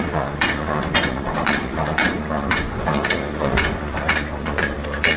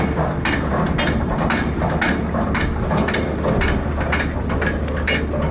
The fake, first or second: first